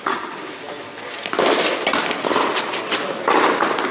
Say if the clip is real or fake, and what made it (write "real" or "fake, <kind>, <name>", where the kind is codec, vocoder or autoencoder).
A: real